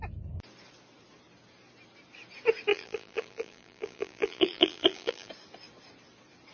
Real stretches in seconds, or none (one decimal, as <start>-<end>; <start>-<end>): 0.0-2.7; 5.3-6.5